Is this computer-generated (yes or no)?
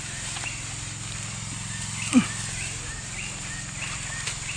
no